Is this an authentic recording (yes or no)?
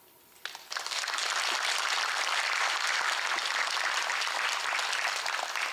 yes